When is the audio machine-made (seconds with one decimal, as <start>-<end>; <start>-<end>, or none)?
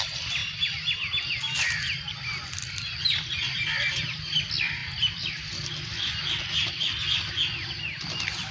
none